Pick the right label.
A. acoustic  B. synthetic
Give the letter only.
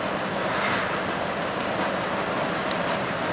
A